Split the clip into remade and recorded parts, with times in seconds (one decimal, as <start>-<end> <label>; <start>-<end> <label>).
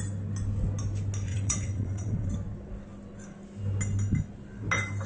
0.0-1.3 recorded; 1.3-2.3 remade; 2.3-5.1 recorded